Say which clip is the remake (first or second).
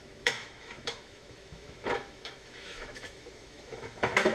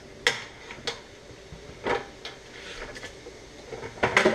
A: first